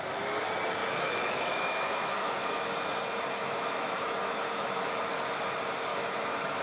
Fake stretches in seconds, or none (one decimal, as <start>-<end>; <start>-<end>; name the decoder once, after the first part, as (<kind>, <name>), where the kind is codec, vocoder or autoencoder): 0.8-2.7 (autoencoder, DAC-VAE); 3.4-5.0; 5.9-6.6